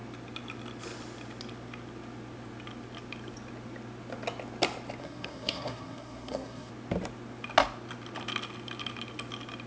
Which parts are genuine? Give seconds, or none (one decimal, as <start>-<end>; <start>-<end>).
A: 0.0-5.0; 6.7-9.7